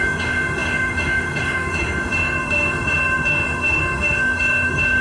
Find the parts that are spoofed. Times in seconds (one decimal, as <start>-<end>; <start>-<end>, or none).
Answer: 0.0-5.0